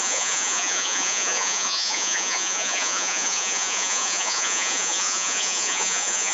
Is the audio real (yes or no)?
no